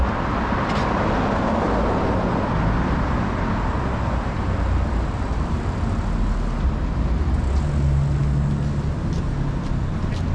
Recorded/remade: recorded